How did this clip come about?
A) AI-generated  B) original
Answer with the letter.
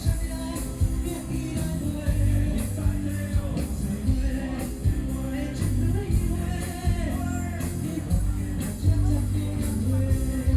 B